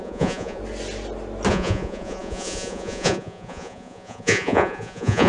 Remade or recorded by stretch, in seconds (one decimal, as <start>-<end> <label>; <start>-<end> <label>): 0.0-0.6 remade; 0.6-1.5 recorded; 1.5-5.3 remade